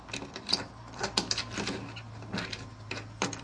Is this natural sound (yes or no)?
yes